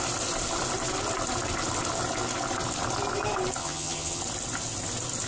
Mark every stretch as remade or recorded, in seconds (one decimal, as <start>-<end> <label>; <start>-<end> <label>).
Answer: 0.0-3.6 recorded; 3.6-4.2 remade; 4.2-5.3 recorded